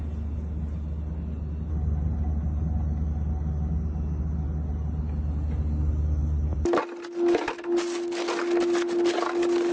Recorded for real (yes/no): yes